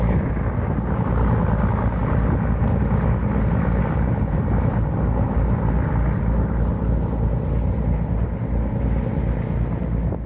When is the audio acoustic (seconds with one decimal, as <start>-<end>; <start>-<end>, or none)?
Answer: 0.0-10.3